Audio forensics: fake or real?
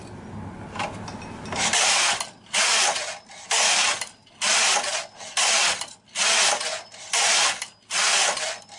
real